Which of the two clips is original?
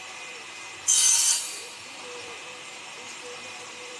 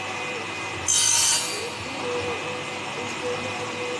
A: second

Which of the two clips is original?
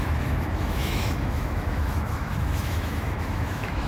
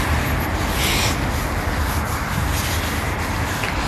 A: second